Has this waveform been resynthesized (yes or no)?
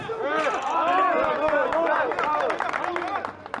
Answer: no